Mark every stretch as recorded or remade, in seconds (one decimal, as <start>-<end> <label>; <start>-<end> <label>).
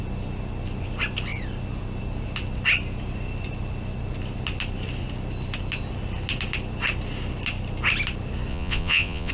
0.0-8.5 recorded; 8.5-9.3 remade